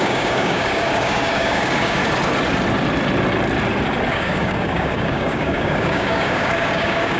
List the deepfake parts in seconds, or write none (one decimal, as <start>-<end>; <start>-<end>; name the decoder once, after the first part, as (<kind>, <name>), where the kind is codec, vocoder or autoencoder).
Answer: 0.0-2.0 (codec, DAC); 4.1-7.2